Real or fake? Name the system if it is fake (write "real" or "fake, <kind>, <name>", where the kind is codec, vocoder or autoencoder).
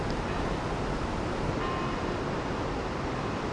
real